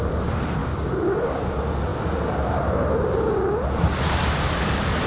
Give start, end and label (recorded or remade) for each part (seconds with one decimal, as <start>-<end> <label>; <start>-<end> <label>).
0.0-0.6 recorded; 0.6-1.5 remade; 1.5-5.1 recorded